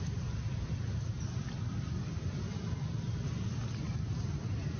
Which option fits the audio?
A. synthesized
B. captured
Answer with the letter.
B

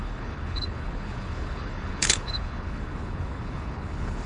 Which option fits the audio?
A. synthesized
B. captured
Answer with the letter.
A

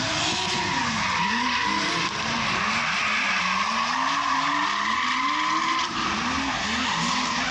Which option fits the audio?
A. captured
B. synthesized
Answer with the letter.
A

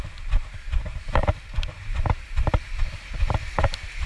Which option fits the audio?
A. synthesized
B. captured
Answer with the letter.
B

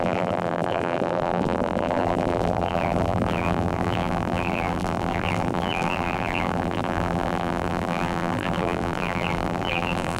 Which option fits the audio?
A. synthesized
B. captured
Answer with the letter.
A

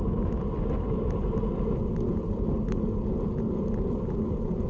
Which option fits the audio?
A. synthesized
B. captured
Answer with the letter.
B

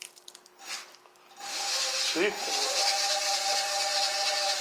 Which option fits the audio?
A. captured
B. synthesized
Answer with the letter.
A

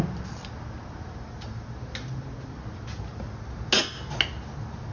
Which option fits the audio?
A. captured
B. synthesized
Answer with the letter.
A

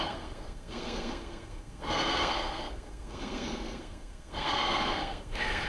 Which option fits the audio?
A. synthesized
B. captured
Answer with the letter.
A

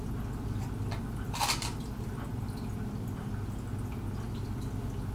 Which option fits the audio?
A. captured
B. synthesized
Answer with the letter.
A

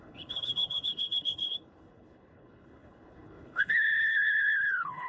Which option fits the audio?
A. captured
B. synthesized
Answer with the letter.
B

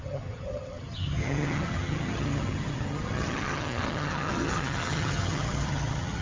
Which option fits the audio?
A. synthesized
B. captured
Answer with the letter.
A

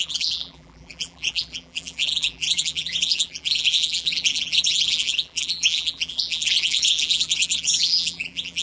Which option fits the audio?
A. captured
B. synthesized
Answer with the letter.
B